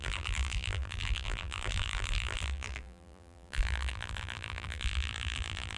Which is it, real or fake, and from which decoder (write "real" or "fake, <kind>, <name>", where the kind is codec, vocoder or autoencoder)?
fake, vocoder, BigVGAN v2